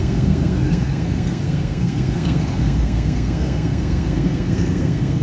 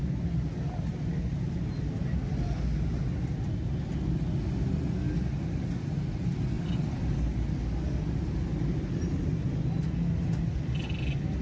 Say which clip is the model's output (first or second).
first